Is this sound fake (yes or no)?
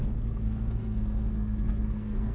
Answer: yes